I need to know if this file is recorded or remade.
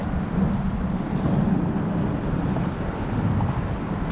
recorded